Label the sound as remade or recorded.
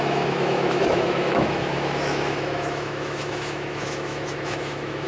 remade